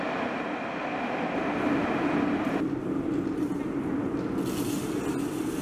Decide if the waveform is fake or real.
real